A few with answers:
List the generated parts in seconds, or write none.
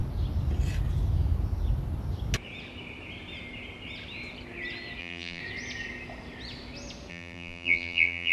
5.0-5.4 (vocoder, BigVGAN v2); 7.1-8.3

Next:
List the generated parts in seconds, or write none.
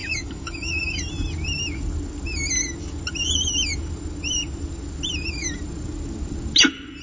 0.0-1.0 (autoencoder, DAC-VAE)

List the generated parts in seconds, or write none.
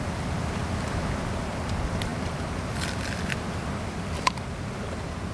none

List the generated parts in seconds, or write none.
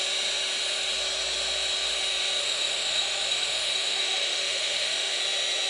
2.4-5.2 (autoencoder, DAC-VAE)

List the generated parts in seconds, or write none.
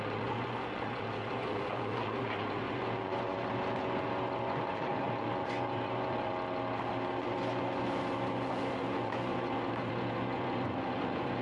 0.0-6.3 (vocoder, Vocos); 7.2-11.4